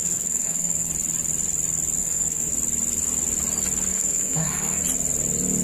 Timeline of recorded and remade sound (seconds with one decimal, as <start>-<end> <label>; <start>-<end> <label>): 0.0-0.9 remade; 0.9-2.0 recorded; 2.0-2.5 remade; 2.5-3.9 recorded; 3.9-4.8 remade; 4.8-5.6 recorded